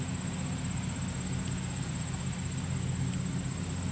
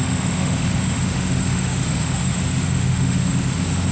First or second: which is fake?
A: second